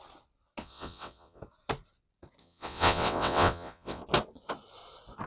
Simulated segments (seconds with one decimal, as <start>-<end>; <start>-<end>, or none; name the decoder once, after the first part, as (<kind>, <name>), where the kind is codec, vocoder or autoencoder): 0.6-1.4 (vocoder, WaveNeXt); 2.4-4.0